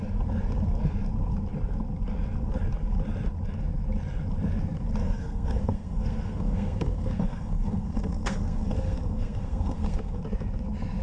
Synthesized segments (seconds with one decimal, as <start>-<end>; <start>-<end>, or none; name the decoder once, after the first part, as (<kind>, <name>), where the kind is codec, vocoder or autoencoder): 5.0-10.2 (codec, SNAC)